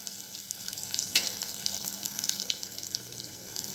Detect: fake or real fake